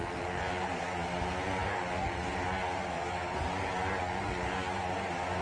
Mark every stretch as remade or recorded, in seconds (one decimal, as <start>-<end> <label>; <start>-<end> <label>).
0.0-5.4 recorded